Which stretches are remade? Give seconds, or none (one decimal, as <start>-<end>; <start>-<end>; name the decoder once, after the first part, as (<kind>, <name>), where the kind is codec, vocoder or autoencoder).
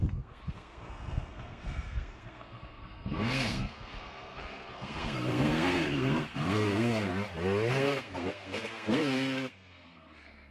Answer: 0.0-7.1 (codec, SNAC); 7.7-10.5